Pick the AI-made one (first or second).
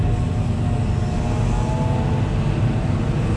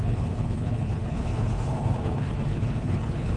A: second